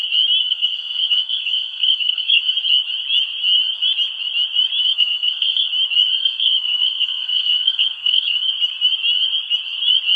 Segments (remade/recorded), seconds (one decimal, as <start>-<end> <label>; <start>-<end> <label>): 0.0-0.4 recorded; 0.4-2.4 remade; 2.4-4.8 recorded; 4.8-5.7 remade; 5.7-6.2 recorded; 6.2-8.5 remade; 8.5-10.2 recorded